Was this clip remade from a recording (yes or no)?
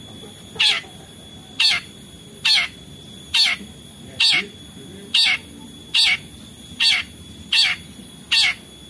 no